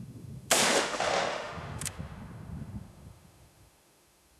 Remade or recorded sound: remade